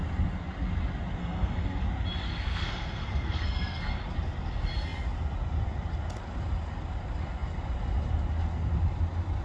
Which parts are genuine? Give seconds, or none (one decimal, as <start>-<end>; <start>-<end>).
0.0-1.2; 1.8-2.2; 3.9-9.4